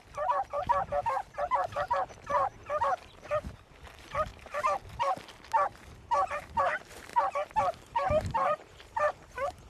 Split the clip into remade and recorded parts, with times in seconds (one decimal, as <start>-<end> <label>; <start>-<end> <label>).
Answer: 0.0-9.7 remade